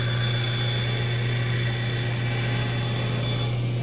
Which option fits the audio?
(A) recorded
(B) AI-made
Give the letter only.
A